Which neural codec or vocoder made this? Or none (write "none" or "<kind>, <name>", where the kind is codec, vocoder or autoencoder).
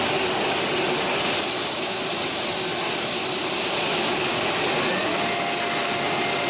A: none